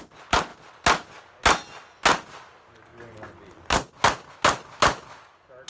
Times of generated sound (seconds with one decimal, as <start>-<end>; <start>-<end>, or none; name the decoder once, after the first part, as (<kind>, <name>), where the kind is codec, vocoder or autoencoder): none